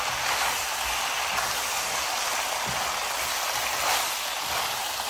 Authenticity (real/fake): real